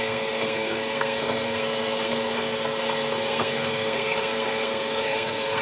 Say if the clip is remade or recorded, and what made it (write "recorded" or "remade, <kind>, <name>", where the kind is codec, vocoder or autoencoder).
remade, codec, SNAC